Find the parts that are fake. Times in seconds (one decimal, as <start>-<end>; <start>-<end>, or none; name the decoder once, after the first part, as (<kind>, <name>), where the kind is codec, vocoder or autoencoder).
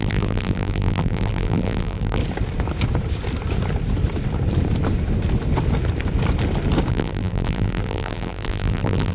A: 0.0-2.2 (vocoder, BigVGAN v2); 6.9-9.1